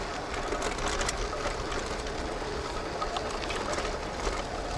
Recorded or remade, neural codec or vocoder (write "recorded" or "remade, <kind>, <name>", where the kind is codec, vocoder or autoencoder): recorded